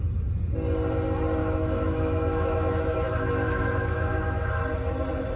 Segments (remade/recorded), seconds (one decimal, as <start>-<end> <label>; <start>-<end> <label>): 0.0-1.4 recorded; 1.4-4.6 remade; 4.6-5.4 recorded